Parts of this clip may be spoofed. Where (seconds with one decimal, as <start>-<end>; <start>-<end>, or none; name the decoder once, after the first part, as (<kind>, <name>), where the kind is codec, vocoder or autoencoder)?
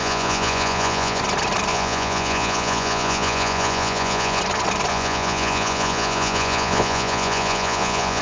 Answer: 0.0-1.2 (vocoder, Vocos); 1.7-4.4; 4.9-8.2